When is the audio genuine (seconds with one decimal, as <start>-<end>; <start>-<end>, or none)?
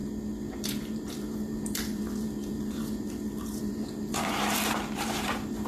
0.0-0.5